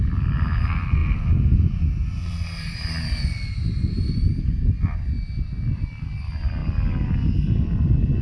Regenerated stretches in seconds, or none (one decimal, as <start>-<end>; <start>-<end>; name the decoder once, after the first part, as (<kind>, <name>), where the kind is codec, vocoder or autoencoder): none